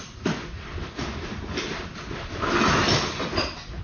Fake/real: real